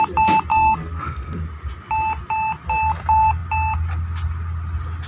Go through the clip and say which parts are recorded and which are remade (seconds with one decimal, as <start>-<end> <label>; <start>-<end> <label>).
0.0-0.5 recorded; 0.5-1.4 remade; 1.4-5.1 recorded